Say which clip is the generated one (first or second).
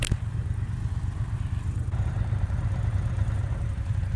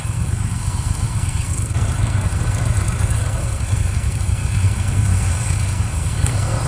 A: second